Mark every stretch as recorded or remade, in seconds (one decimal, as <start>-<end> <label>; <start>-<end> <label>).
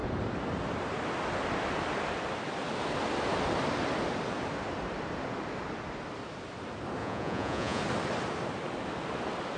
0.0-7.0 recorded; 7.0-7.8 remade; 7.8-9.6 recorded